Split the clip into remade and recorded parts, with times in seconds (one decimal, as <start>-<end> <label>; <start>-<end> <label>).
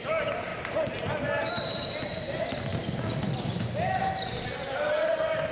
0.0-5.5 recorded